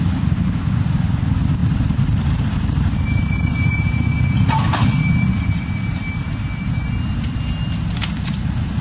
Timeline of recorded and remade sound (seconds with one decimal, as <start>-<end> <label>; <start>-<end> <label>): 0.0-1.6 recorded; 1.6-6.9 remade; 6.9-8.8 recorded